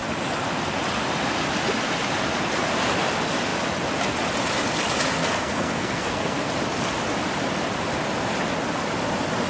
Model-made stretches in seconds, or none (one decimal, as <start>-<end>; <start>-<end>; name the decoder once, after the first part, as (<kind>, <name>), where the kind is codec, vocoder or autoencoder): 5.2-6.5 (codec, SNAC)